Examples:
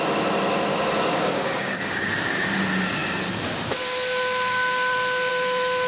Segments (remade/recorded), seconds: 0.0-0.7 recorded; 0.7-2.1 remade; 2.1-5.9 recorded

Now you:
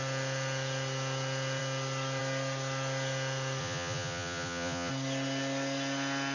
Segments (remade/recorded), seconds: 0.0-3.6 recorded; 3.6-4.9 remade; 4.9-6.3 recorded

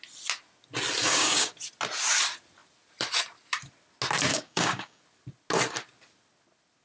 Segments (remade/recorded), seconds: 0.0-1.0 recorded; 1.0-1.5 remade; 1.5-4.3 recorded; 4.3-5.0 remade; 5.0-6.8 recorded

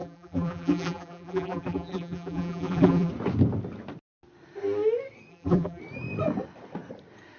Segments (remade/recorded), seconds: 0.0-3.1 remade; 3.1-5.3 recorded; 5.3-5.8 remade; 5.8-7.4 recorded

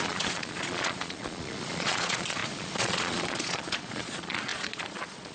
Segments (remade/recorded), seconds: 0.0-5.3 remade

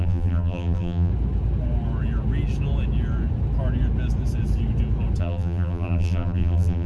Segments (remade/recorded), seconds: 0.0-1.1 remade; 1.1-5.2 recorded; 5.2-6.9 remade

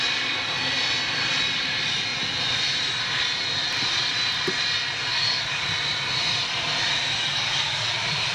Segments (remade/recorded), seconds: 0.0-5.1 recorded; 5.1-5.7 remade; 5.7-7.2 recorded; 7.2-7.9 remade; 7.9-8.3 recorded